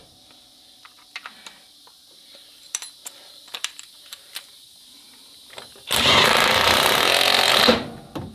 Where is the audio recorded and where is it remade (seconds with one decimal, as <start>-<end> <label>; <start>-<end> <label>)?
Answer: 0.0-2.5 recorded; 2.5-7.5 remade; 7.5-8.3 recorded